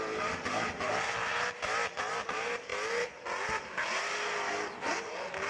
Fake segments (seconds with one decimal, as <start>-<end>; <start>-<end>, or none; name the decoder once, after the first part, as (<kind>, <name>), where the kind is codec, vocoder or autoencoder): none